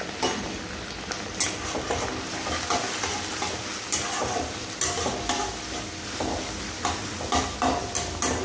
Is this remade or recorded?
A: recorded